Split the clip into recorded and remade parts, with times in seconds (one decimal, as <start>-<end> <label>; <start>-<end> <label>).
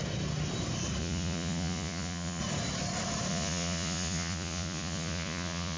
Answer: 0.0-1.0 recorded; 1.0-2.4 remade; 2.4-3.3 recorded; 3.3-5.8 remade